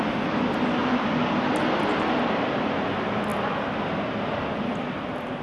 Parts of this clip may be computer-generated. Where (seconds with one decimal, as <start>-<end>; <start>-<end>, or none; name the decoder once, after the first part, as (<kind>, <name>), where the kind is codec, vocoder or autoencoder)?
none